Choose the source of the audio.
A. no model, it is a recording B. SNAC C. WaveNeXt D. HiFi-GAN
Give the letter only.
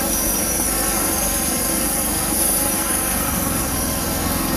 B